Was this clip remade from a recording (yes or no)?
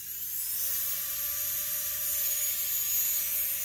no